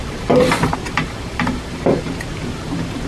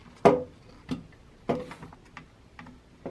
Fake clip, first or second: first